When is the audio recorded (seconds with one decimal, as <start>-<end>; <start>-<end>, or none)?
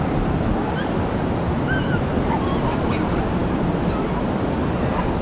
0.0-5.2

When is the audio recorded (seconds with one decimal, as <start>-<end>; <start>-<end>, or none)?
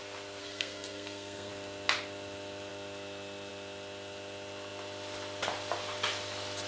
0.0-0.4; 1.5-6.7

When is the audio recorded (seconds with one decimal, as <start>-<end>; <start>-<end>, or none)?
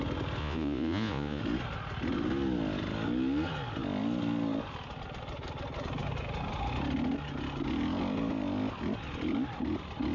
0.0-0.4; 1.4-10.1